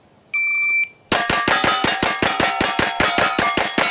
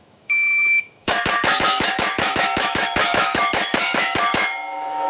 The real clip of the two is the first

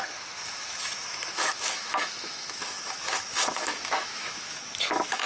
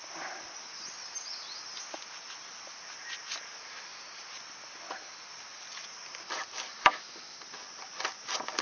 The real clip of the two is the second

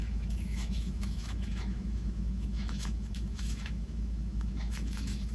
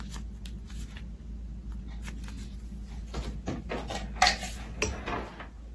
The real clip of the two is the second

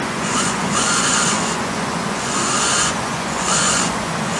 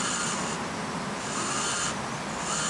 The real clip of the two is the second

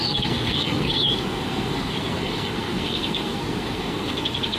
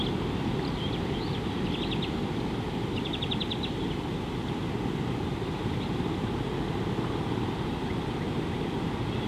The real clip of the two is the second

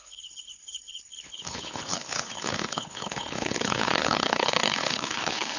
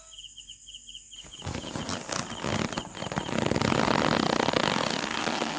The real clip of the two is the second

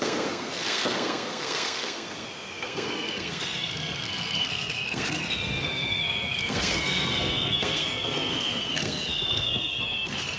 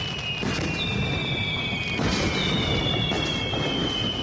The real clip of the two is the second